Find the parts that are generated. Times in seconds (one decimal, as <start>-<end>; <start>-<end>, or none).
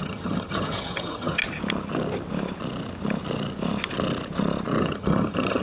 0.0-1.4; 4.8-5.6